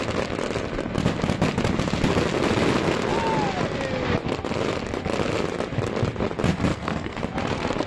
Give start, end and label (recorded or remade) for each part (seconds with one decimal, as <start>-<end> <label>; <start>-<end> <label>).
0.0-6.7 recorded; 6.7-7.2 remade; 7.2-7.9 recorded